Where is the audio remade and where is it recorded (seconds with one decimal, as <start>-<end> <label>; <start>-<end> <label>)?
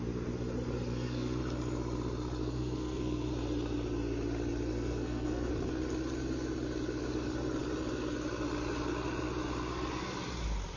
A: 0.0-0.9 recorded; 0.9-1.4 remade; 1.4-2.4 recorded; 2.4-3.3 remade; 3.3-4.7 recorded; 4.7-5.5 remade; 5.5-10.8 recorded